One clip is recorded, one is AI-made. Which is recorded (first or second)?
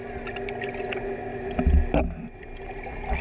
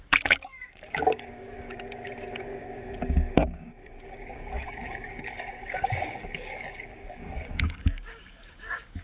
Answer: first